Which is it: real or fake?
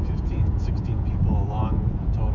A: fake